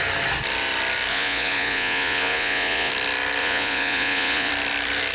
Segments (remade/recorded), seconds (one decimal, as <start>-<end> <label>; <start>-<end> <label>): 0.0-1.1 recorded; 1.1-2.9 remade; 2.9-3.4 recorded; 3.4-4.5 remade; 4.5-5.1 recorded